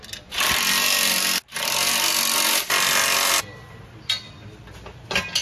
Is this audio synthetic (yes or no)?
no